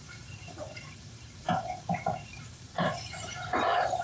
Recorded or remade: remade